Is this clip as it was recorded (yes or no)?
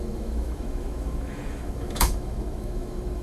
no